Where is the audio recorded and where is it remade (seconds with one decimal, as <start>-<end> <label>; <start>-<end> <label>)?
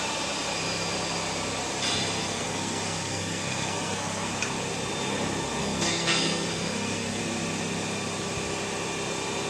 0.0-2.2 recorded; 2.2-4.3 remade; 4.3-5.6 recorded; 5.6-7.2 remade; 7.2-9.5 recorded